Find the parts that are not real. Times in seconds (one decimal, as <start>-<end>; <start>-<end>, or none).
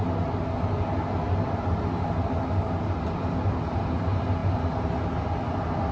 none